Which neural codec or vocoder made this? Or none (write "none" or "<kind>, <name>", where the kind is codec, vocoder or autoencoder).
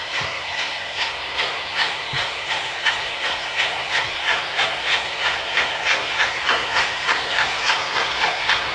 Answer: codec, SNAC